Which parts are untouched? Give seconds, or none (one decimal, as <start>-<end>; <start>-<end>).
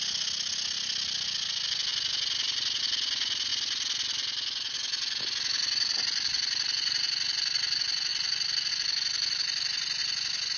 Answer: 0.0-10.6